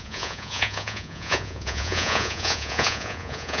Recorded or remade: remade